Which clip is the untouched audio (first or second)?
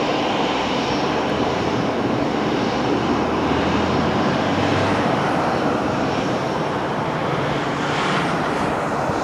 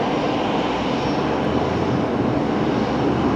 second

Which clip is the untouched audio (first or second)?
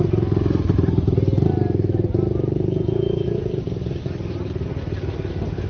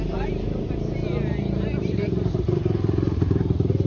first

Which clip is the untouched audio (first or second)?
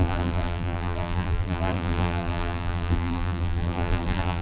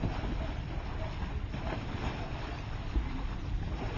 second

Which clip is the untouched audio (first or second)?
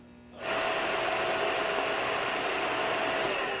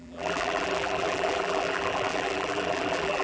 first